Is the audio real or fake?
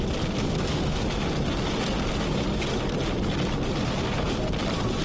real